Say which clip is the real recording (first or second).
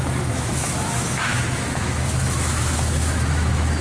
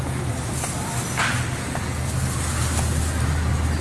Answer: second